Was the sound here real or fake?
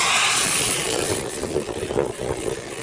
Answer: fake